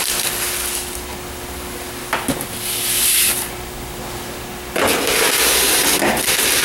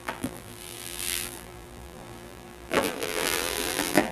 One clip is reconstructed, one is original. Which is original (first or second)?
first